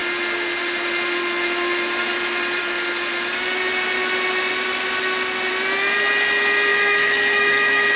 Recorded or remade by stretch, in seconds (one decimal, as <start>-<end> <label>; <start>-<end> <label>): 0.0-6.7 recorded; 6.7-8.0 remade